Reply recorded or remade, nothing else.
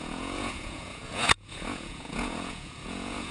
remade